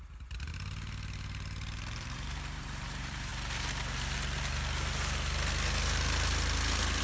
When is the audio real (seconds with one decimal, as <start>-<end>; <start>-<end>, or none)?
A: 3.3-7.0